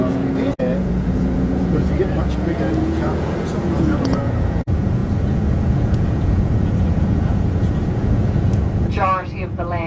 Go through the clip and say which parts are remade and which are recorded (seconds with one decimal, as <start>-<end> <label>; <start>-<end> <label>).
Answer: 0.0-9.9 remade